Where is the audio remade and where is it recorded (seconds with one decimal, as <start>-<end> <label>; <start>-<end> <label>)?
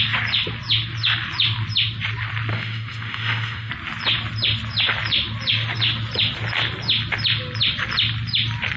0.0-2.5 recorded; 2.5-3.7 remade; 3.7-8.8 recorded